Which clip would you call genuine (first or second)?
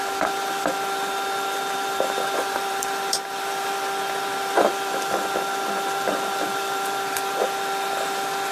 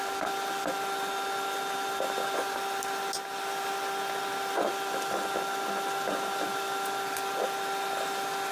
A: second